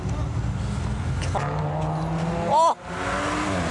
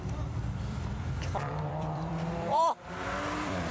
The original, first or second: first